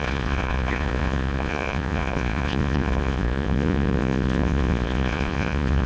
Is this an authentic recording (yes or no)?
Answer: no